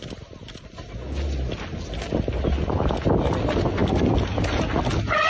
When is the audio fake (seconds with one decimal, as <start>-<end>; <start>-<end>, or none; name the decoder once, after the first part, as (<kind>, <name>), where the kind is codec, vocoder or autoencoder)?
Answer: none